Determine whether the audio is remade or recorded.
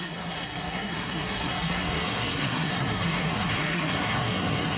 remade